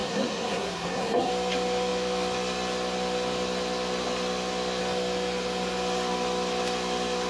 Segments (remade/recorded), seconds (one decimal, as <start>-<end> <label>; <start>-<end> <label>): 0.0-1.3 remade; 1.3-7.3 recorded